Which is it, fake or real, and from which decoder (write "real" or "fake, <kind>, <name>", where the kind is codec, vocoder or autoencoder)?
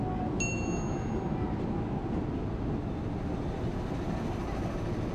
real